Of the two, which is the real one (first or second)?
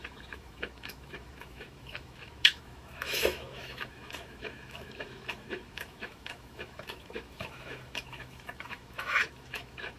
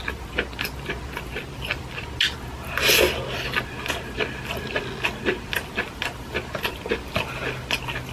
second